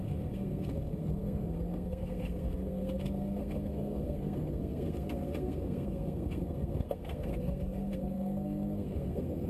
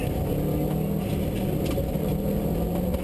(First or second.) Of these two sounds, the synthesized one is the first